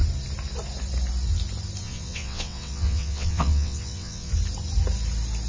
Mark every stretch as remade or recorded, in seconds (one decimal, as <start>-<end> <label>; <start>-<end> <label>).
0.0-1.8 recorded; 1.8-4.3 remade; 4.3-5.5 recorded